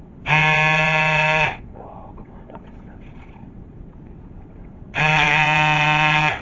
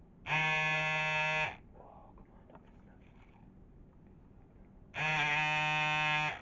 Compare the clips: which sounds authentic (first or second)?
second